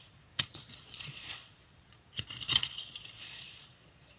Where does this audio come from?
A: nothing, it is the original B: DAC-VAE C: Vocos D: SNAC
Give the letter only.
C